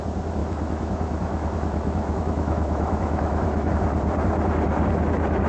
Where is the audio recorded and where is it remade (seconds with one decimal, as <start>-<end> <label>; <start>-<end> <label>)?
0.0-0.4 recorded; 0.4-3.7 remade; 3.7-5.5 recorded